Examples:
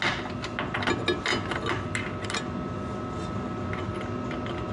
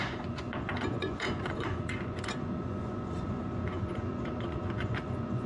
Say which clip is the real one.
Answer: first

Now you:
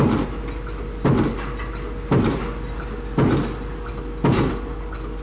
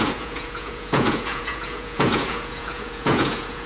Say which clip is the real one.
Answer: first